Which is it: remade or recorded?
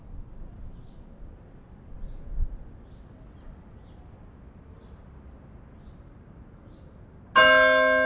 recorded